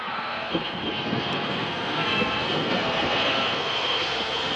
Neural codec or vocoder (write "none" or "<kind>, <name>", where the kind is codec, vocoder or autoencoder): codec, SNAC